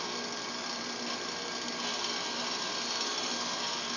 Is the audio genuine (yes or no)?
yes